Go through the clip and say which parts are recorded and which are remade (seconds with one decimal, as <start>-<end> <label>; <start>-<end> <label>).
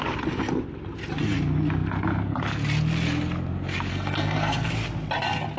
0.0-3.9 recorded; 3.9-4.7 remade; 4.7-5.6 recorded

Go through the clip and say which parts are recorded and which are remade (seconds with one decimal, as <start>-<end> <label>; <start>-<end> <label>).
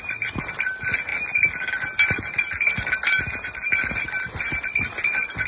0.0-5.5 recorded